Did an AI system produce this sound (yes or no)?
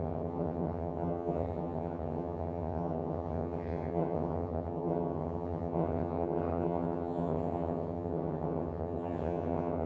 yes